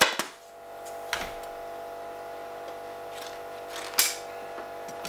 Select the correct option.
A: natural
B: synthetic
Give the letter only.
A